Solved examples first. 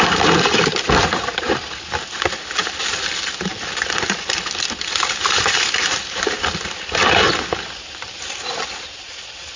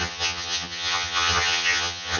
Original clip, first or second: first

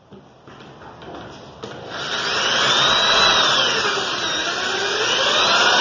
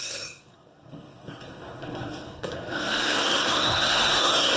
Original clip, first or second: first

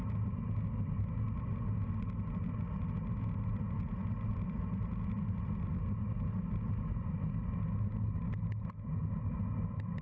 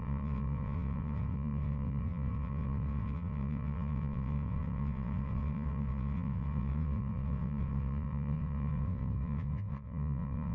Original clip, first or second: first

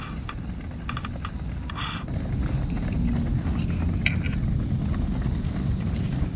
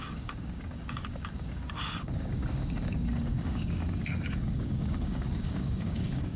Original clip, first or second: first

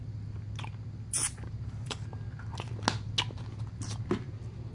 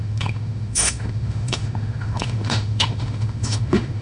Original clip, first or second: first